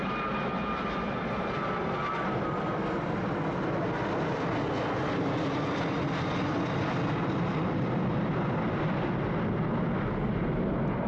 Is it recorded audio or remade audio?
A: recorded